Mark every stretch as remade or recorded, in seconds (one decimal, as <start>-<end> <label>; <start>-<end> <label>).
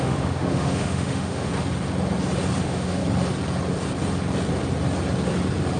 0.0-1.5 remade; 1.5-2.6 recorded; 2.6-3.0 remade; 3.0-5.8 recorded